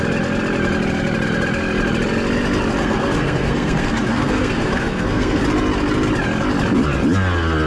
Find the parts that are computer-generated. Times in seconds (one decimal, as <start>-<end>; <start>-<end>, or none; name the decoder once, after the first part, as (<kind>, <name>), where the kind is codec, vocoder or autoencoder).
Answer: 2.8-5.4 (codec, SNAC)